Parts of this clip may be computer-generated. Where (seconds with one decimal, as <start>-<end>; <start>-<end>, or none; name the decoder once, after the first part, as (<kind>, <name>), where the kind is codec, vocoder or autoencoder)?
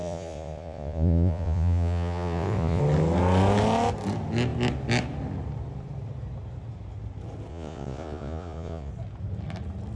0.0-2.8 (vocoder, Vocos); 7.5-8.9